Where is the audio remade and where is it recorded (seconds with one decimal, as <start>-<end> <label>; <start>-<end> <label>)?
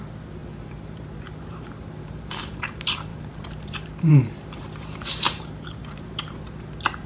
0.0-0.4 recorded; 0.4-2.7 remade; 2.7-3.1 recorded; 3.1-6.4 remade; 6.4-7.1 recorded